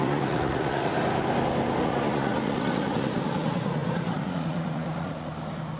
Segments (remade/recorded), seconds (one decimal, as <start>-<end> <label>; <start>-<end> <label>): 0.0-0.9 remade; 0.9-1.8 recorded; 1.8-5.3 remade; 5.3-5.8 recorded